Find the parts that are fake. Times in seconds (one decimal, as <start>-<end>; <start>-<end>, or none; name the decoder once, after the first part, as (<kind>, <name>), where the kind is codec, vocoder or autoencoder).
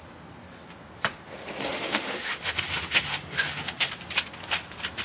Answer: 1.7-3.9 (autoencoder, DAC-VAE)